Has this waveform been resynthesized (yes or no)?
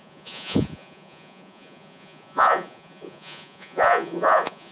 yes